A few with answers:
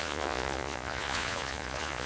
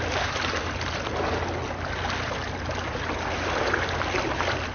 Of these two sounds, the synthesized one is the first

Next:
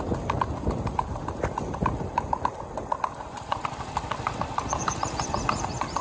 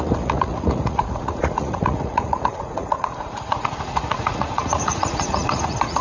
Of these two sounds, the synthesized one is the second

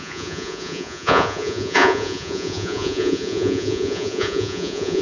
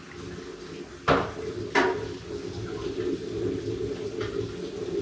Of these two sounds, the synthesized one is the first